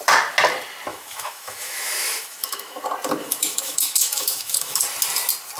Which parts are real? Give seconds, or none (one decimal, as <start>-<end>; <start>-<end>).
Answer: 0.0-0.9; 2.8-3.2; 4.8-5.6